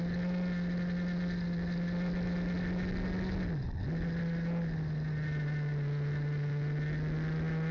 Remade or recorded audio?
recorded